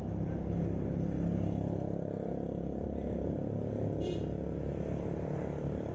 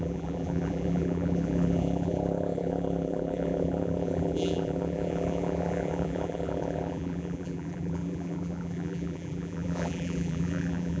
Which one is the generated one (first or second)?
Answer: second